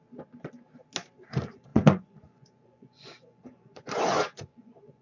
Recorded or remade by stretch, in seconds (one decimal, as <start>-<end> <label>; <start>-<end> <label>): 0.0-1.7 recorded; 1.7-5.0 remade